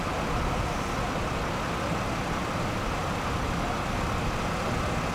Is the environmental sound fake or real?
real